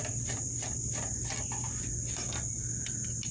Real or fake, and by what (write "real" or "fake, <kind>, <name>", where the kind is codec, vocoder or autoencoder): real